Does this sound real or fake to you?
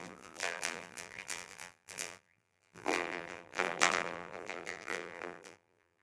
fake